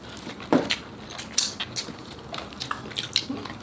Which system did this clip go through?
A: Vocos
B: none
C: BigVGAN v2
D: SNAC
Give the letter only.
B